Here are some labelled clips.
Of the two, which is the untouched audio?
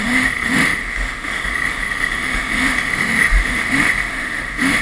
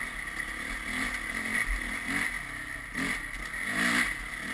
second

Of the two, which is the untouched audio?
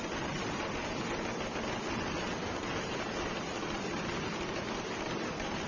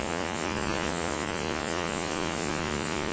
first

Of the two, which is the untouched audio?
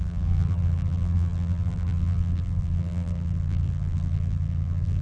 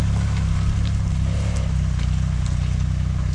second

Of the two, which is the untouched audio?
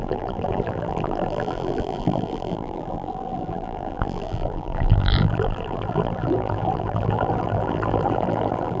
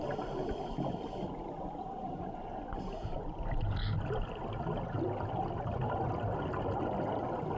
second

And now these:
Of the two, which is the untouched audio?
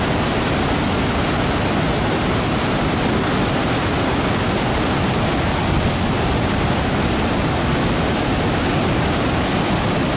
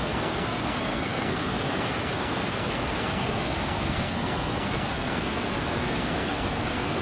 first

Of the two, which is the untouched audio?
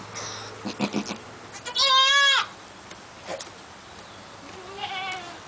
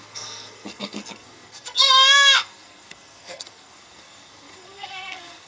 first